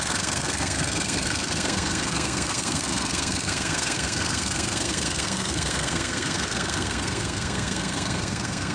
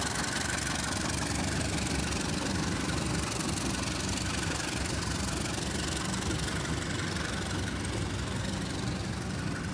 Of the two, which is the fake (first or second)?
first